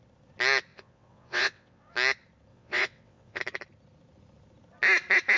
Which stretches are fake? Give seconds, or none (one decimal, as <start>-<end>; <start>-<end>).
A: 0.7-1.9; 2.5-3.4